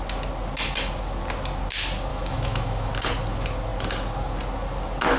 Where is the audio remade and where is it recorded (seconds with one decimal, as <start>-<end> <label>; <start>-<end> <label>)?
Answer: 0.0-2.1 recorded; 2.1-2.9 remade; 2.9-5.2 recorded